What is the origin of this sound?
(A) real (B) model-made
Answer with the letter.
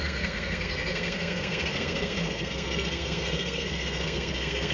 B